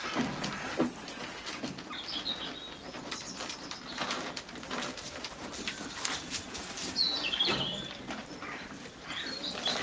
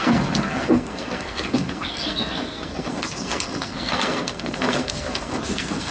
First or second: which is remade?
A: second